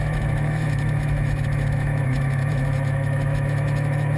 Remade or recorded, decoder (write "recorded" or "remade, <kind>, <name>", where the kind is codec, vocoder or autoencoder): remade, autoencoder, DAC-VAE